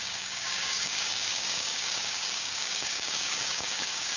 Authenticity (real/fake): fake